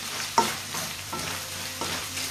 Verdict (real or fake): fake